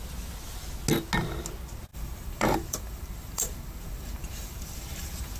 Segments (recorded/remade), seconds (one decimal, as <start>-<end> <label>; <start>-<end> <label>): 0.0-1.9 recorded; 1.9-5.4 remade